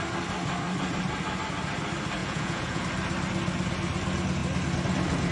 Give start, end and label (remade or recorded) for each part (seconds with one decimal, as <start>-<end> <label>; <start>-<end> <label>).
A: 0.0-2.2 recorded; 2.2-2.8 remade; 2.8-5.3 recorded

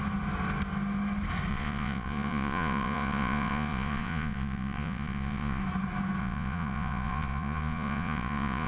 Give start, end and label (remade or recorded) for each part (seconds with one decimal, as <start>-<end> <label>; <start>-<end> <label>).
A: 0.0-1.5 recorded; 1.5-5.6 remade; 5.6-6.2 recorded; 6.2-8.7 remade

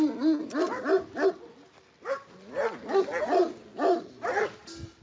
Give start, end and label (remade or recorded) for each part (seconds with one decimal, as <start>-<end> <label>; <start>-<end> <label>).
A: 0.0-5.0 recorded

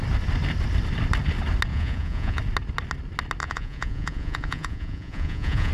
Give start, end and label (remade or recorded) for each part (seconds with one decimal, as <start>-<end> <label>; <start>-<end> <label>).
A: 0.0-1.7 recorded; 1.7-2.4 remade; 2.4-3.4 recorded; 3.4-5.7 remade